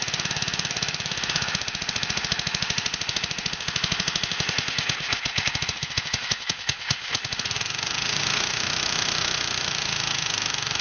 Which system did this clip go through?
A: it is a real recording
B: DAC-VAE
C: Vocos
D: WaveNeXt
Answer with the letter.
B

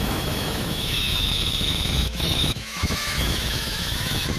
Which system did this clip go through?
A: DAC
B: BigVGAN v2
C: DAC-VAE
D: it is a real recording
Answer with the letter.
C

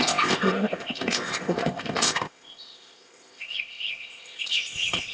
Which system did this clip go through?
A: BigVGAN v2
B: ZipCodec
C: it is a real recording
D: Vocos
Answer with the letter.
B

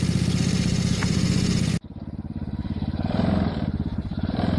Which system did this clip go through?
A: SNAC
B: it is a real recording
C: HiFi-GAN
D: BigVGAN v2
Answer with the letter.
D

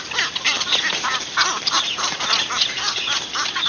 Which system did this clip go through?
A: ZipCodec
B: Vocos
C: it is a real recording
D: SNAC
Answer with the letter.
C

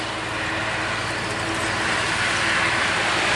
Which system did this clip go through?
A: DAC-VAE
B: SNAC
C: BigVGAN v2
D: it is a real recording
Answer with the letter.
D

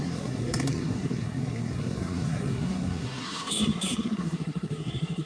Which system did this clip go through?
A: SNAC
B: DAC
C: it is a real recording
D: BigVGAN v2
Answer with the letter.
A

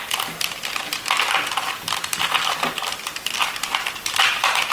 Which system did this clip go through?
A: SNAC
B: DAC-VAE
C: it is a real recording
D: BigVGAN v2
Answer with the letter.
C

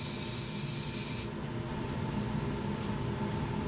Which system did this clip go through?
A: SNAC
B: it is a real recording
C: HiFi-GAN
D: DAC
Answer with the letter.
B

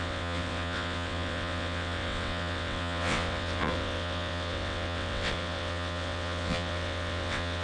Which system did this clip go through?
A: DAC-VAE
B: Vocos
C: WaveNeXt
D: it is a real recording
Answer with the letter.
C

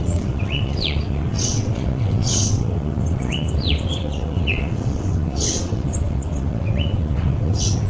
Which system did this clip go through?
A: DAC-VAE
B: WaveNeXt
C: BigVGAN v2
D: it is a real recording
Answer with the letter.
B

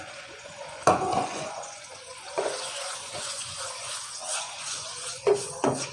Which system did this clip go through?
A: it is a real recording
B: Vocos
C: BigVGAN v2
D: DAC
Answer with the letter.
B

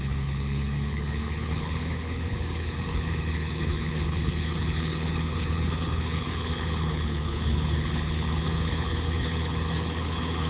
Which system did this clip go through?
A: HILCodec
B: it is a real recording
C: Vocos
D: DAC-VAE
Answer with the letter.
A